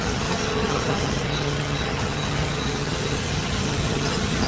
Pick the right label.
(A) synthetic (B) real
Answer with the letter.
A